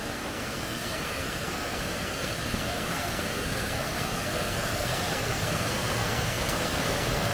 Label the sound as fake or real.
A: fake